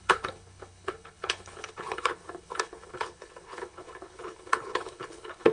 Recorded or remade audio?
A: remade